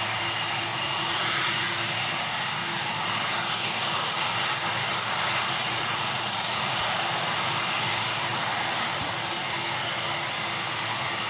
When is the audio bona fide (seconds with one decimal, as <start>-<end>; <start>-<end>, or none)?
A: 0.0-0.7; 1.7-5.6; 7.0-11.3